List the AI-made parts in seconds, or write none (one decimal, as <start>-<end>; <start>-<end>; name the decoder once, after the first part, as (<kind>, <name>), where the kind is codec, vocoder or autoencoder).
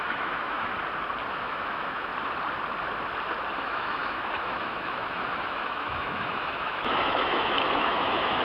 0.0-0.7 (autoencoder, DAC-VAE); 1.3-2.1; 3.6-8.4